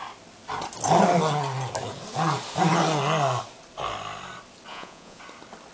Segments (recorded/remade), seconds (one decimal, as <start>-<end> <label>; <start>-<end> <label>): 0.0-4.7 recorded; 4.7-5.2 remade; 5.2-5.7 recorded